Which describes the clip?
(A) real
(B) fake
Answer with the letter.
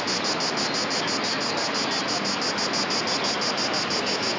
A